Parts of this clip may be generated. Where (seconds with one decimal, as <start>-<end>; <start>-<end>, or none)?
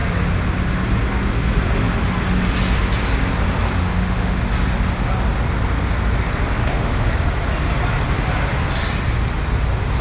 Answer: 3.8-4.4; 6.6-7.1